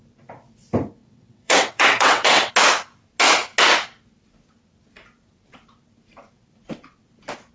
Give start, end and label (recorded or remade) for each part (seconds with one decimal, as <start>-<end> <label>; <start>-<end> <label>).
0.0-1.0 recorded; 1.0-2.5 remade; 2.5-7.5 recorded